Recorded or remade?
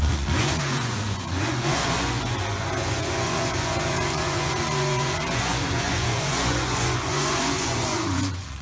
remade